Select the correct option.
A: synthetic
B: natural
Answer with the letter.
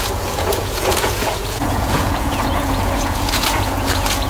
A